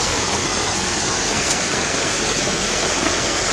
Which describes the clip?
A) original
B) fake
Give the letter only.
B